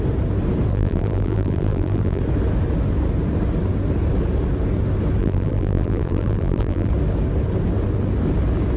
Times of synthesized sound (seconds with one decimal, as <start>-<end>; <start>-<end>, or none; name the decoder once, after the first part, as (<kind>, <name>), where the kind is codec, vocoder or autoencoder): 0.7-2.2 (vocoder, BigVGAN v2); 5.2-6.9